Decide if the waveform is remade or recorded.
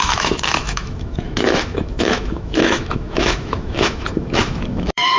remade